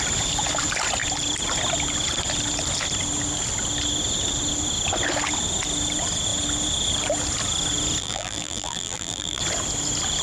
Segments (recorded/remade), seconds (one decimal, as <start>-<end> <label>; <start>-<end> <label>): 0.0-8.0 recorded; 8.0-9.4 remade; 9.4-10.2 recorded